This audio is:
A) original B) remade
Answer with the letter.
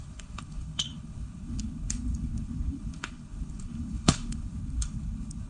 B